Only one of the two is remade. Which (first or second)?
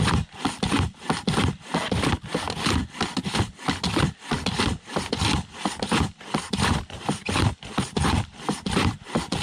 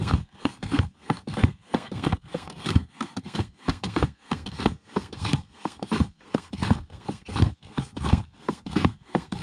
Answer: second